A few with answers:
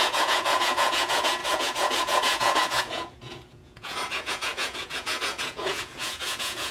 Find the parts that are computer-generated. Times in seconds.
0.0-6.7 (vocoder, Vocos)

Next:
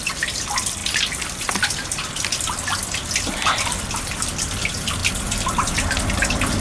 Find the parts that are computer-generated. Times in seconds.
0.0-0.8 (vocoder, BigVGAN v2); 3.7-5.0

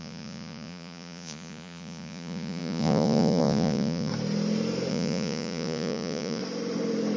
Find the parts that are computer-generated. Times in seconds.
0.0-4.1 (vocoder, Vocos); 4.9-6.4

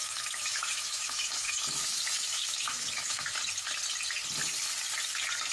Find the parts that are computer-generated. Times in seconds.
0.0-3.3 (autoencoder, DAC-VAE)

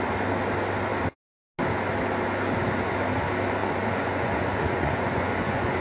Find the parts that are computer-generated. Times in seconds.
3.6-5.8 (vocoder, Vocos)

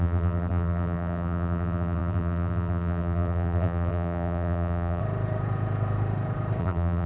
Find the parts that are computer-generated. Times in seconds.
0.0-5.0 (vocoder, BigVGAN v2); 6.6-7.1

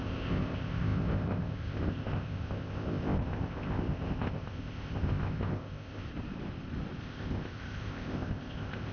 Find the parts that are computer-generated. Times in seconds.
0.0-6.1 (codec, ZipCodec); 7.0-8.9

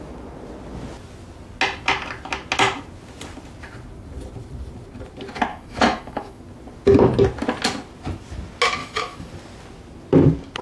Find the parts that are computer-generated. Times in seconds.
5.5-6.4 (autoencoder, DAC-VAE); 8.8-9.3